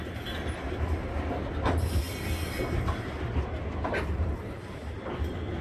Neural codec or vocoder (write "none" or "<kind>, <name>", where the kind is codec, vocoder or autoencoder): none